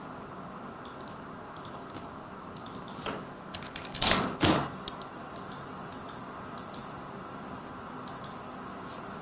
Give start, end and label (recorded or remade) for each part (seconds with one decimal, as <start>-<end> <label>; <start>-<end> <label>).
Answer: 0.0-9.2 recorded